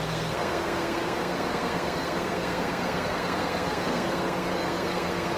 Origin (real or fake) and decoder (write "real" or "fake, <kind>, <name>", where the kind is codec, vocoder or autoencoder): fake, codec, SNAC